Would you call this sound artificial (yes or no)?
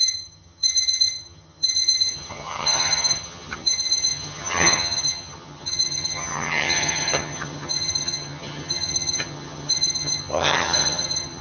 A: yes